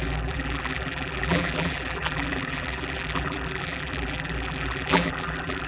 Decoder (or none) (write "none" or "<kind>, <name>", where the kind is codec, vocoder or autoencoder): vocoder, BigVGAN v2